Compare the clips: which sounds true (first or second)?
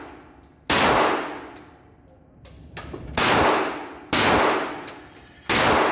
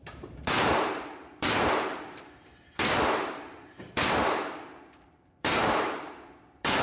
first